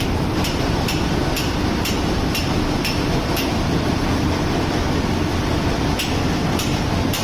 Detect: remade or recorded recorded